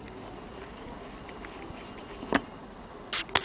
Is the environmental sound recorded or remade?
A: recorded